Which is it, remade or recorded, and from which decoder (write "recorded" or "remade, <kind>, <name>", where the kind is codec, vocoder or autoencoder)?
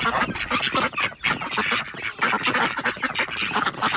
recorded